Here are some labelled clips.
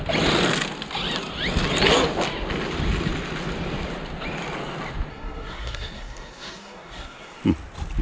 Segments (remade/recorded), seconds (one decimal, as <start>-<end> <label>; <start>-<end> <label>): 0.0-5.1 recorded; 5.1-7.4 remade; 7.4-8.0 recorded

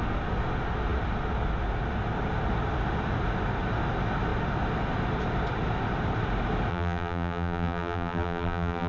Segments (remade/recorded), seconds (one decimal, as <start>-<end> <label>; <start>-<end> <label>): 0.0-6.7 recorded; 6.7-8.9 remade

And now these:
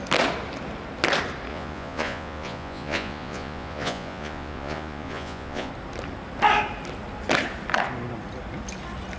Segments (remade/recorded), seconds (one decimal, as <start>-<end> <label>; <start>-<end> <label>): 0.0-1.5 recorded; 1.5-5.7 remade; 5.7-9.2 recorded